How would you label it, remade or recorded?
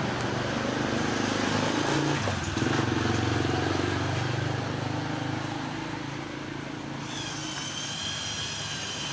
recorded